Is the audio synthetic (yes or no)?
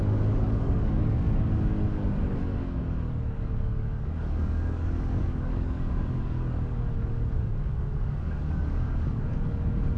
yes